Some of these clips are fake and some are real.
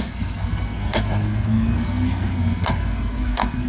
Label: fake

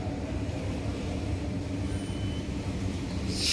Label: fake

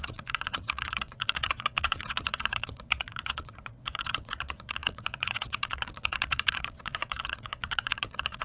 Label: fake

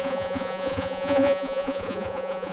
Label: fake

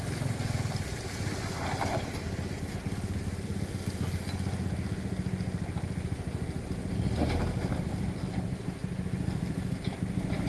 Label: real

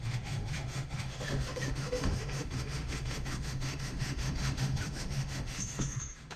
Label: fake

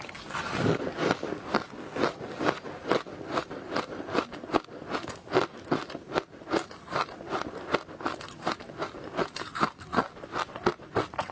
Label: real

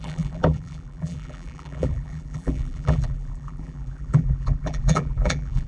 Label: fake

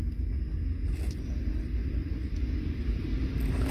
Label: real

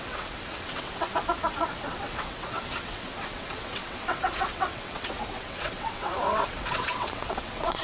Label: fake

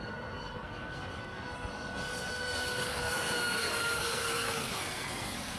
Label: fake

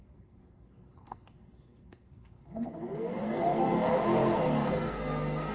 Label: fake